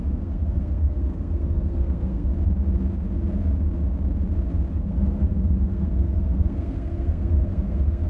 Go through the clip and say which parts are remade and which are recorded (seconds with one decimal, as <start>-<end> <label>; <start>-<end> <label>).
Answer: 0.0-2.3 remade; 2.3-4.7 recorded; 4.7-8.1 remade